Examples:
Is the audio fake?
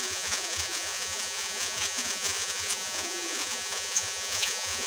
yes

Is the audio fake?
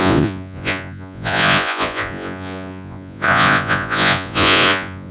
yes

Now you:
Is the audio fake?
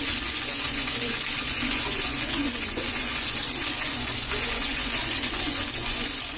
yes